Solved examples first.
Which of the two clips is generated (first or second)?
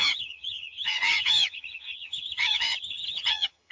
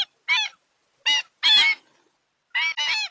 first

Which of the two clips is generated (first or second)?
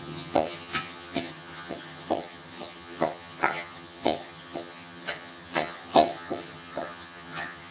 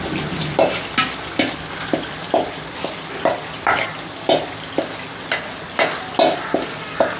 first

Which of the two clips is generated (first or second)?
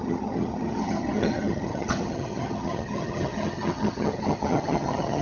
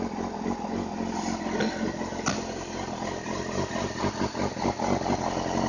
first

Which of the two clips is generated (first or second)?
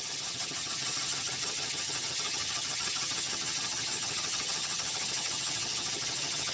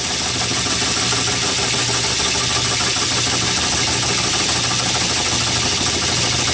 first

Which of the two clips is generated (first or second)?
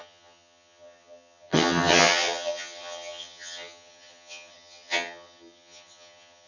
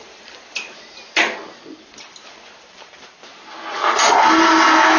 first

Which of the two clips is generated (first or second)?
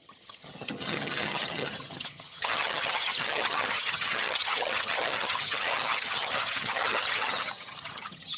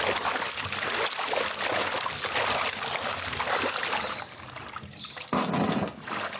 first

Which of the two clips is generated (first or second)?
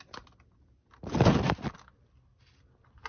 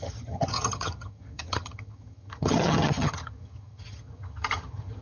second